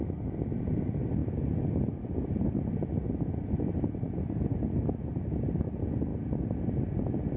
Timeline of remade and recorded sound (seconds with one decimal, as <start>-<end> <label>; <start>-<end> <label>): 0.0-7.4 recorded